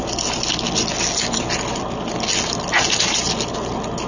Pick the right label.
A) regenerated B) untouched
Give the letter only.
B